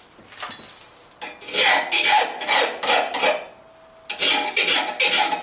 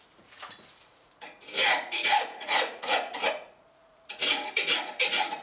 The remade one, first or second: second